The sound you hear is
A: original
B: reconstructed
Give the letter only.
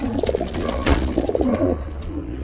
B